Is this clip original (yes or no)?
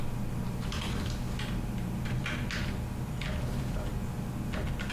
yes